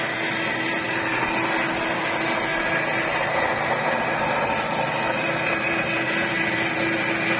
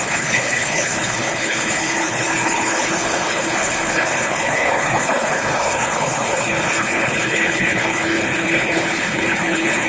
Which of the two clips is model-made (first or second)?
second